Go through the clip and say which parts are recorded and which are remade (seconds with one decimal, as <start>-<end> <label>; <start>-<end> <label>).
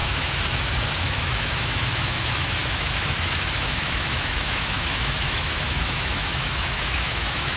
0.0-7.6 remade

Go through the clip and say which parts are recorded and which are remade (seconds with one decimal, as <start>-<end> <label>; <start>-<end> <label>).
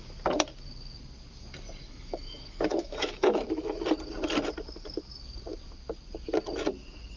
0.0-1.8 recorded; 1.8-3.8 remade; 3.8-7.2 recorded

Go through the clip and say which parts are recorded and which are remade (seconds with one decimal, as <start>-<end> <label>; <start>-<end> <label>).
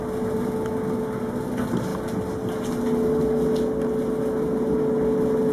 0.0-5.5 recorded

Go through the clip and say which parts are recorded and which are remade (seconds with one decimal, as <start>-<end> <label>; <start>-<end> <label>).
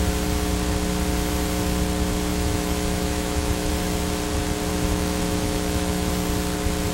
0.0-2.3 recorded; 2.3-3.7 remade; 3.7-4.7 recorded; 4.7-6.1 remade; 6.1-6.9 recorded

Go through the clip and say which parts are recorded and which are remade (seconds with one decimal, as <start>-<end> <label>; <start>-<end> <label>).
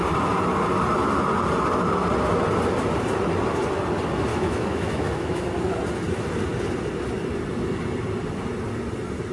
0.0-4.3 recorded; 4.3-5.4 remade; 5.4-9.3 recorded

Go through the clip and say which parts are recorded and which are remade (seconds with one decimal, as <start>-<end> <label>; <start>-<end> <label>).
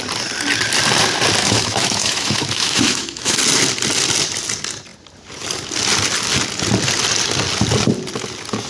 0.0-1.4 recorded; 1.4-3.4 remade; 3.4-8.7 recorded